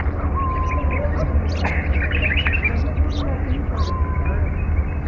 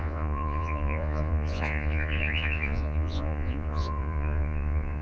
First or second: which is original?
first